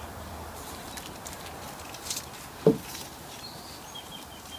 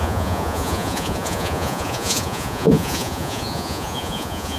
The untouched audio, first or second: first